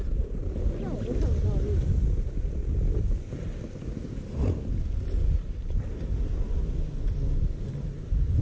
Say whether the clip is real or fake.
real